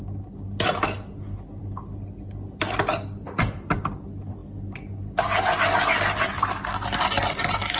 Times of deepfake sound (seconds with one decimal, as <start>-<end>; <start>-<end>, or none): none